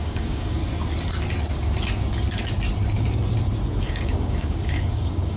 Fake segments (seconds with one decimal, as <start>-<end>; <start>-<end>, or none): 0.0-0.6; 3.8-5.4